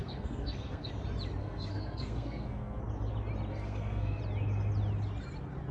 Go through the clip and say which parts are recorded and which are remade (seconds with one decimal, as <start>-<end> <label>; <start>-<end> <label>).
0.0-0.9 remade; 0.9-1.4 recorded; 1.4-2.8 remade; 2.8-3.5 recorded; 3.5-4.2 remade; 4.2-5.7 recorded